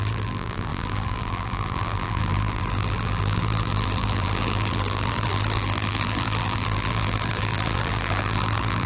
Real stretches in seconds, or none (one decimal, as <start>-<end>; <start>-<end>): none